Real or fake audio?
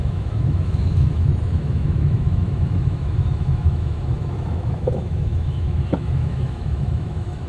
fake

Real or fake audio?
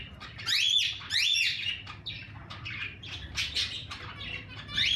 real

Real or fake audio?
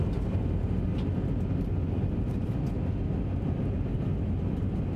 real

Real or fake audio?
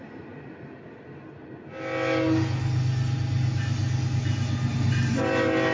real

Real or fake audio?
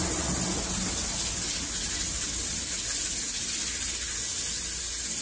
real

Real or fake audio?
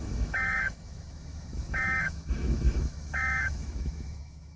fake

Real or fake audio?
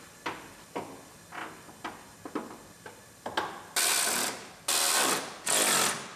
real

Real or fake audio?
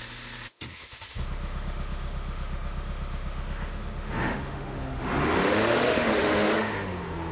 fake